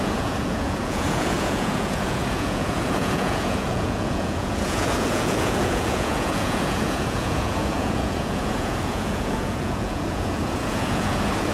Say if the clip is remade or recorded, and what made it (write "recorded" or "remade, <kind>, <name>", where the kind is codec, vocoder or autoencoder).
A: remade, vocoder, Vocos